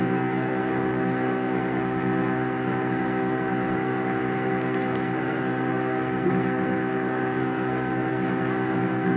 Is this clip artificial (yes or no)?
yes